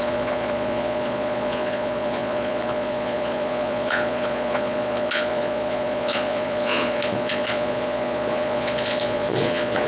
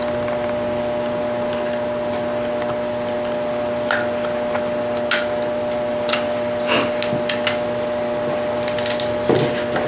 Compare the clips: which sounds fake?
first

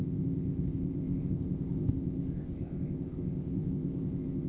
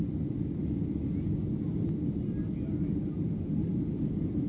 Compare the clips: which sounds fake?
first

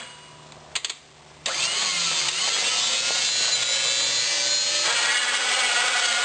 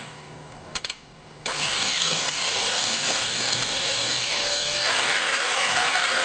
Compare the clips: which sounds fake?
second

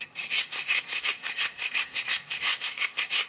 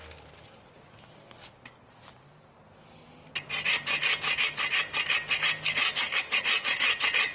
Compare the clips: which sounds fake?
first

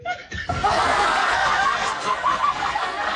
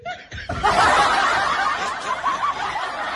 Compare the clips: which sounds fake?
first